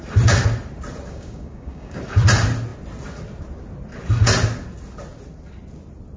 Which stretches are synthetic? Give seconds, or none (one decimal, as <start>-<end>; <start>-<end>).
1.1-2.0